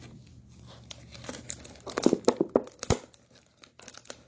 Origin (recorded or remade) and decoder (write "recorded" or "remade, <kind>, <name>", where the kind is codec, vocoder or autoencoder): recorded